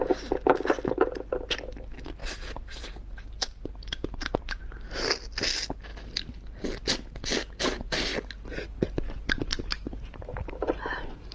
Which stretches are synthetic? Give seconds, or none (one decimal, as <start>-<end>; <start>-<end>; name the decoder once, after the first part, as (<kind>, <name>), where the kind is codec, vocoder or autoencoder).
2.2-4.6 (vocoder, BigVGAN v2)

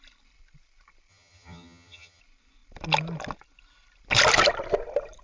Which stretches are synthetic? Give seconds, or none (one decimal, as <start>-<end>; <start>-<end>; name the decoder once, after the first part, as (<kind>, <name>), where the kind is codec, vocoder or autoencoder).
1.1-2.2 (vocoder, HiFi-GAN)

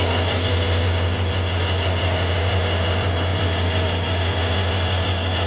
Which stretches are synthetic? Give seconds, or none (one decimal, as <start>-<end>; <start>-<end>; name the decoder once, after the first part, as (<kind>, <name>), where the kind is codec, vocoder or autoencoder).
none

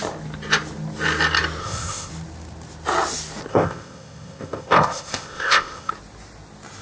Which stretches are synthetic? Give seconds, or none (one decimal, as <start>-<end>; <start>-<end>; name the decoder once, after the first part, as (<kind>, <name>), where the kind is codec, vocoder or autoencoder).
1.6-2.1 (codec, ZipCodec); 3.5-5.9

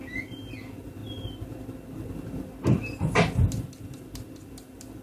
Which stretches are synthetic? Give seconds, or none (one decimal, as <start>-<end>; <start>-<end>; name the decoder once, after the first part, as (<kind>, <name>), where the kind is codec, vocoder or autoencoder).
none

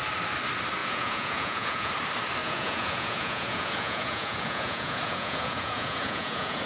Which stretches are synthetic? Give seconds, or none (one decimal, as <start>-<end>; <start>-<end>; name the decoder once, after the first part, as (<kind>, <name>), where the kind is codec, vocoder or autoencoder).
0.8-1.9 (vocoder, Vocos); 2.4-6.7

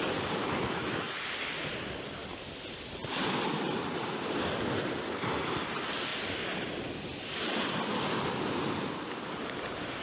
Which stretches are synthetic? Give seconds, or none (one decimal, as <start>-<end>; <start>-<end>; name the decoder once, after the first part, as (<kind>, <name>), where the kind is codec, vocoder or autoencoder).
0.4-1.2 (autoencoder, DAC-VAE)